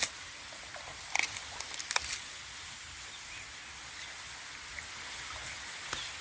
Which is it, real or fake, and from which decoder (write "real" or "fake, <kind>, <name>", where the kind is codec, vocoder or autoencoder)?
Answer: real